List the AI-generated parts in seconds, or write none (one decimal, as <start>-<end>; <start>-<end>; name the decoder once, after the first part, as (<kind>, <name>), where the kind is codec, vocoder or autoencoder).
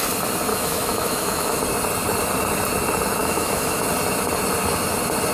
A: 0.5-1.6 (autoencoder, DAC-VAE); 3.2-3.8